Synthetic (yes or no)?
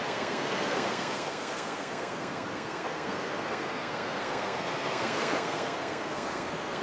yes